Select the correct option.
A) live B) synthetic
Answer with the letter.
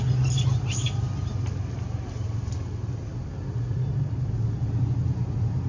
A